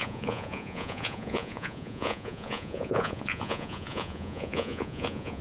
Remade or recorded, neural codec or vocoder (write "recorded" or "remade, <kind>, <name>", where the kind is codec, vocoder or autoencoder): remade, vocoder, Vocos